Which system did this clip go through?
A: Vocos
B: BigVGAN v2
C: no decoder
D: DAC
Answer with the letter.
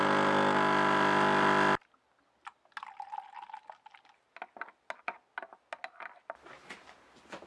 C